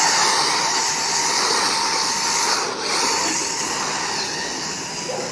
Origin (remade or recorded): recorded